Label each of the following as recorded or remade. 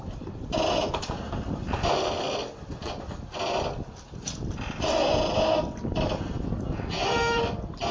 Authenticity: recorded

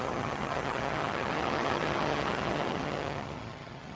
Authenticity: remade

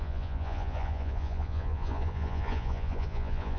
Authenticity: remade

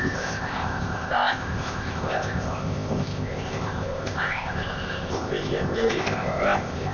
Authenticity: remade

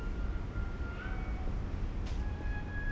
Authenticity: remade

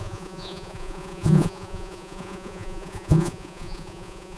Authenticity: remade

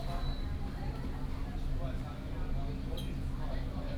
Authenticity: recorded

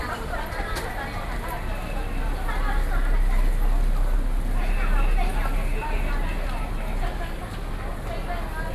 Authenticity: recorded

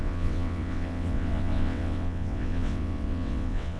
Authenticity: remade